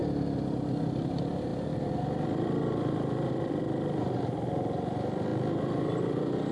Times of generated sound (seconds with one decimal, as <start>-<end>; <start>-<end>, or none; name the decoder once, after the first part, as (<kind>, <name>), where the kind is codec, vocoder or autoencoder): 0.7-6.5 (vocoder, BigVGAN v2)